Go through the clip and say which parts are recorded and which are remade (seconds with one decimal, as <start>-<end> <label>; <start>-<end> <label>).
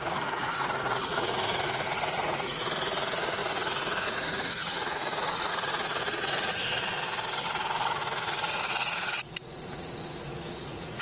0.0-6.6 remade; 6.6-7.9 recorded; 7.9-11.0 remade